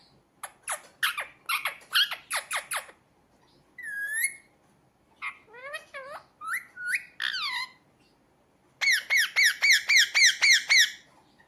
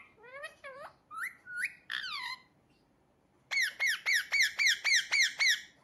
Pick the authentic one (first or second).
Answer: first